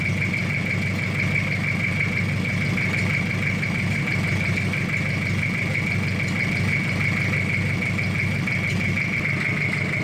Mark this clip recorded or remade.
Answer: recorded